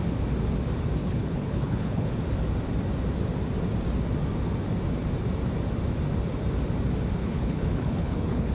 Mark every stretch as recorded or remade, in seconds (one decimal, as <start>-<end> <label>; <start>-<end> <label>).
0.0-1.0 recorded; 1.0-2.1 remade; 2.1-7.2 recorded; 7.2-8.5 remade